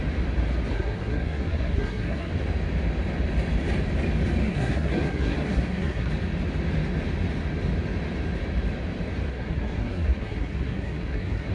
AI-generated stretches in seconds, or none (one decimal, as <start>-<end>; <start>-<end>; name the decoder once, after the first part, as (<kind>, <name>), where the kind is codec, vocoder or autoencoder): 0.7-2.3 (codec, SNAC); 4.4-6.1; 9.3-11.5

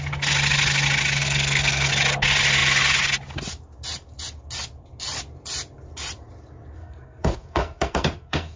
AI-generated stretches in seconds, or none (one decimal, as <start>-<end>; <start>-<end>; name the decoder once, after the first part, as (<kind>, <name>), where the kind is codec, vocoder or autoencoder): 1.2-1.9 (codec, SNAC); 6.8-8.6

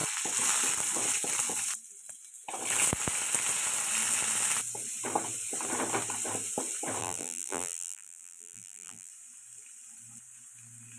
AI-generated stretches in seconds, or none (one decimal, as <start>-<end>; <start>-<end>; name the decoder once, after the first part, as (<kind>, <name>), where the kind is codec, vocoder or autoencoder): 7.0-9.1 (vocoder, BigVGAN v2)

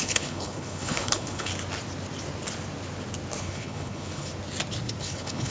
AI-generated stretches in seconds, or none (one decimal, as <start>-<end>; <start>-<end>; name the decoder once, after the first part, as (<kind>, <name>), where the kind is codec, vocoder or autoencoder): 0.0-1.5 (codec, HILCodec); 3.4-4.3; 5.0-5.5